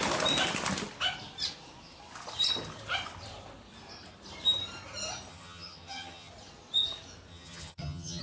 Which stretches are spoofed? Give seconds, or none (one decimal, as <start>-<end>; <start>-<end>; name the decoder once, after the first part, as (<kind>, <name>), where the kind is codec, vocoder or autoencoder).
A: 5.3-6.3 (vocoder, HiFi-GAN); 7.3-8.2